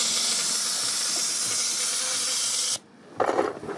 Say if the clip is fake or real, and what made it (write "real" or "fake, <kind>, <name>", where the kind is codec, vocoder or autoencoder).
real